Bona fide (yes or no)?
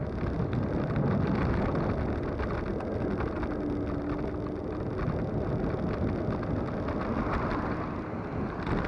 yes